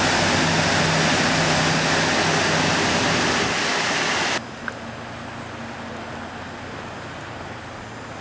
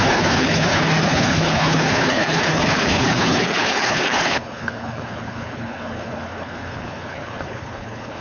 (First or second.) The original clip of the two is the first